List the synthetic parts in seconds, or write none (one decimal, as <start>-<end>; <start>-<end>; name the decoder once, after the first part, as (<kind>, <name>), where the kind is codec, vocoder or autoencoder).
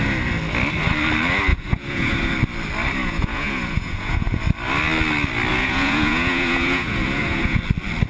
1.5-2.3 (vocoder, Vocos); 3.0-4.4; 5.5-7.6